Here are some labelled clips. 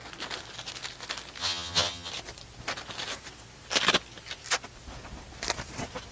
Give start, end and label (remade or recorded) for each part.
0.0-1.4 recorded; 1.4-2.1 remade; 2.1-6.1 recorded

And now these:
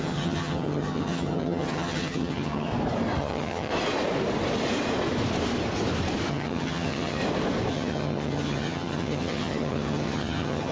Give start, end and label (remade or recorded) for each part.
0.0-2.7 remade; 2.7-3.2 recorded; 3.2-3.7 remade; 3.7-6.3 recorded; 6.3-7.2 remade; 7.2-7.7 recorded; 7.7-10.7 remade

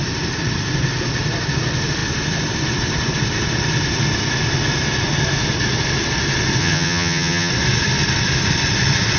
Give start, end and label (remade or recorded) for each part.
0.0-6.6 recorded; 6.6-7.5 remade; 7.5-9.2 recorded

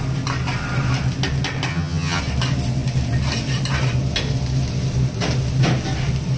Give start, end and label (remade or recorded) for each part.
0.0-1.7 recorded; 1.7-2.2 remade; 2.2-6.4 recorded

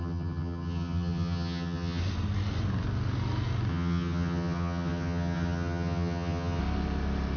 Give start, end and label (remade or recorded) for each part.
0.0-2.0 remade; 2.0-3.7 recorded; 3.7-6.6 remade; 6.6-7.4 recorded

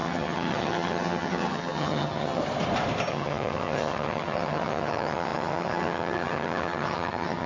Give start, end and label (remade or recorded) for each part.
0.0-2.4 remade; 2.4-3.1 recorded; 3.1-7.5 remade